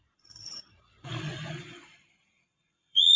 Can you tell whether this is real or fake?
fake